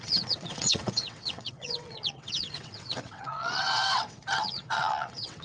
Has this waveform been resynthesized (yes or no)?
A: yes